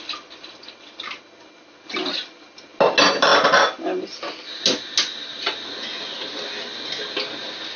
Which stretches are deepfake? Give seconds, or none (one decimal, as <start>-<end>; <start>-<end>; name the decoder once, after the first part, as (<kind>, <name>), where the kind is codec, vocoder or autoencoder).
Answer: none